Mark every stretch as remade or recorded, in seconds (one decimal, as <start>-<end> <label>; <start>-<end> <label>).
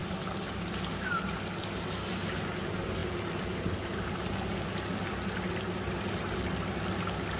0.0-0.7 remade; 0.7-7.4 recorded